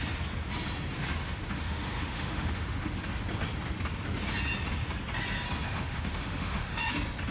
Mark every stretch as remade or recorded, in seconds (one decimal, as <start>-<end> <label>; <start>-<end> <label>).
0.0-1.2 recorded; 1.2-3.0 remade; 3.0-5.7 recorded; 5.7-6.8 remade; 6.8-7.3 recorded